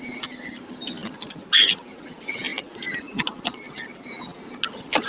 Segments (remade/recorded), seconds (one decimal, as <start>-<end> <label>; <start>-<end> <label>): 0.0-5.1 recorded